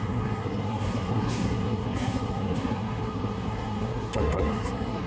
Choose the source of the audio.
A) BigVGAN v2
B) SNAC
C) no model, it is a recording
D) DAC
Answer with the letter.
B